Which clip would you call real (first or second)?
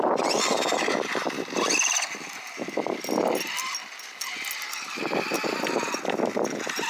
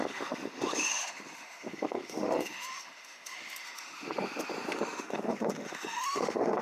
first